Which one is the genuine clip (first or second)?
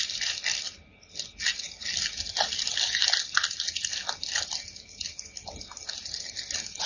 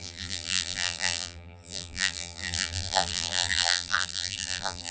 first